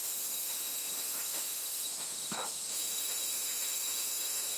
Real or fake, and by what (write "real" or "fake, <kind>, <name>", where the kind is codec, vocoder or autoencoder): fake, autoencoder, DAC-VAE